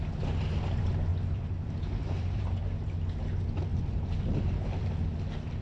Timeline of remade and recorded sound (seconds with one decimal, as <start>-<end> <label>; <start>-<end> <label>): 0.0-1.1 recorded; 1.1-2.4 remade; 2.4-3.7 recorded; 3.7-4.8 remade; 4.8-5.6 recorded